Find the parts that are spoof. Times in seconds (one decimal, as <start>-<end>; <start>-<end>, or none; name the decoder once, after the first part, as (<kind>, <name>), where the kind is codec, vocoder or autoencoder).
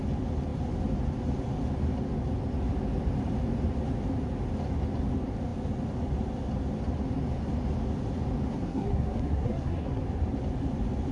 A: 8.5-10.0 (codec, SNAC)